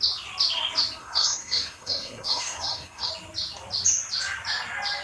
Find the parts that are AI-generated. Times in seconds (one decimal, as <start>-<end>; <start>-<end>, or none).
1.0-3.1